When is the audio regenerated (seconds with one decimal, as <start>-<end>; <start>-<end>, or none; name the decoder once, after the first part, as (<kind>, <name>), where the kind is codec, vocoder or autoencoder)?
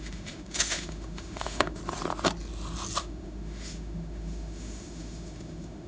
0.0-1.8 (autoencoder, DAC-VAE); 3.0-5.9